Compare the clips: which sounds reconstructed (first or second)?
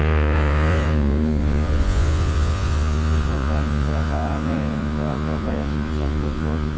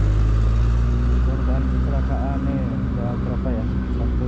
first